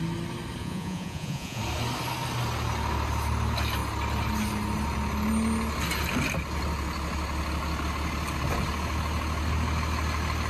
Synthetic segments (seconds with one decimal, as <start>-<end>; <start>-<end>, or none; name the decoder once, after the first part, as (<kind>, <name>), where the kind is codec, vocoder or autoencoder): 0.6-1.6 (vocoder, Vocos)